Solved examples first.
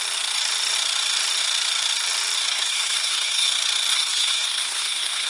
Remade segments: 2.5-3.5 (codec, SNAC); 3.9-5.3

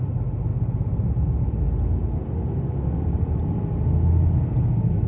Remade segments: none

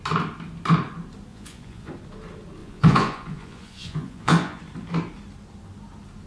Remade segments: 1.3-1.9 (vocoder, Vocos); 2.6-4.6